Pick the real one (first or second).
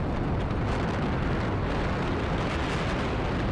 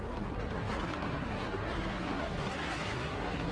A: first